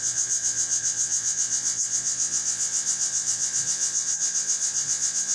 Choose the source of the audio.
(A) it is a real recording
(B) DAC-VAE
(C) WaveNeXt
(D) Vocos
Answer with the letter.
D